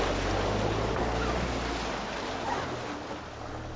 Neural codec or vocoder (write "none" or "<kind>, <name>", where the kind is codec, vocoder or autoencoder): none